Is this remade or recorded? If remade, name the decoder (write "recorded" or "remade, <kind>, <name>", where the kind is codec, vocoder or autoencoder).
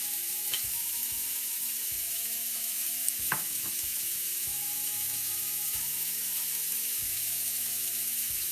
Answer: remade, autoencoder, DAC-VAE